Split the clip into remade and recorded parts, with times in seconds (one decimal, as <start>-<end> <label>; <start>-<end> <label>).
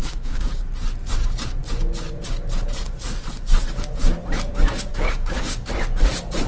0.0-0.6 remade; 0.6-4.9 recorded; 4.9-5.7 remade; 5.7-6.5 recorded